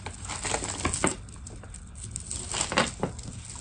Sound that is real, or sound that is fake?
real